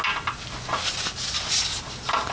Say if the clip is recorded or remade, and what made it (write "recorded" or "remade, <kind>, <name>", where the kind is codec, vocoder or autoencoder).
recorded